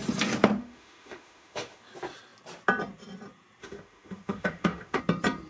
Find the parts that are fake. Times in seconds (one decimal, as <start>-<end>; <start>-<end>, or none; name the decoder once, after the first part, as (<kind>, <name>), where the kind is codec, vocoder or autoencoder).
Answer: 0.6-1.8 (autoencoder, DAC-VAE); 3.6-5.0